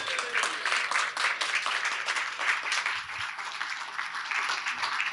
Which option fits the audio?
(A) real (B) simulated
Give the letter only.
A